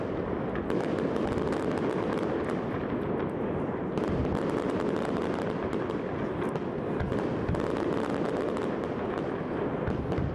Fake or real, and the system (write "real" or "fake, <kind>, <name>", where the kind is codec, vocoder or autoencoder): real